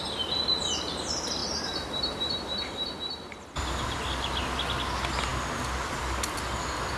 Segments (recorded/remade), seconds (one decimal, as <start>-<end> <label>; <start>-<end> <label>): 0.0-1.4 recorded; 1.4-3.0 remade; 3.0-7.0 recorded